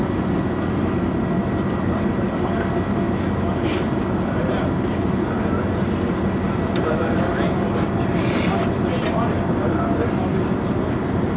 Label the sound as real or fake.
real